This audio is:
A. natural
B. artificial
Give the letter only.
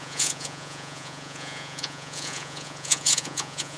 B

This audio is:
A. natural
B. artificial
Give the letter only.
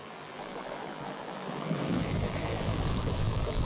B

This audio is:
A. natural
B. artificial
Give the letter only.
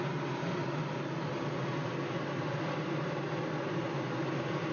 A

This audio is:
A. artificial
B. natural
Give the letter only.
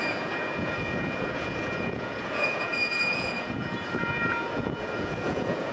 A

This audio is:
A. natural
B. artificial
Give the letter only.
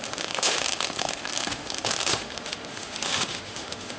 B